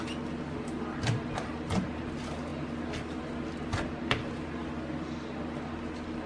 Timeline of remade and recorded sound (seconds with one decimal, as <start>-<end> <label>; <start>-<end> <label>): 0.0-6.3 recorded